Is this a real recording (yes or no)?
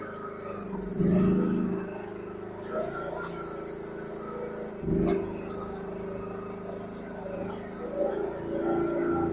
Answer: yes